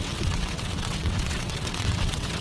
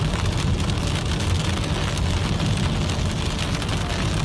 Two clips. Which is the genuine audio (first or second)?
second